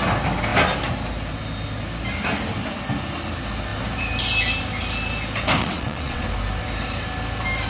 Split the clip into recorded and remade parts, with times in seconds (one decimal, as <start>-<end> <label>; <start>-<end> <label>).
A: 0.0-5.6 recorded; 5.6-6.2 remade; 6.2-7.7 recorded